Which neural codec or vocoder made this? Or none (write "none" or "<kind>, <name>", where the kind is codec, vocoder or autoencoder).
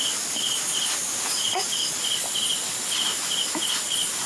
none